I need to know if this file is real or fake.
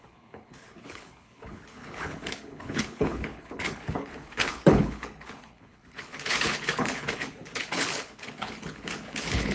fake